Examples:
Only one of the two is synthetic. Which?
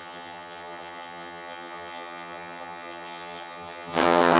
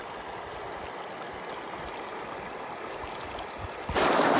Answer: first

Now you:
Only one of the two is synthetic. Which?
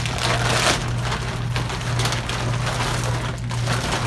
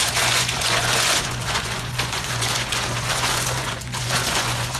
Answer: second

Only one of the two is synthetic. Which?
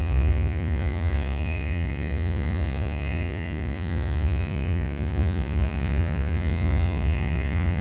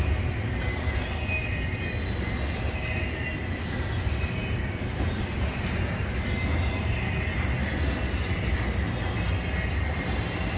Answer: first